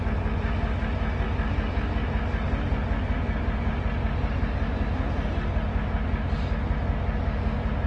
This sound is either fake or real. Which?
real